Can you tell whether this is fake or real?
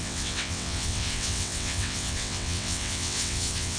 fake